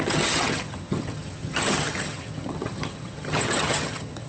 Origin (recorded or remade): remade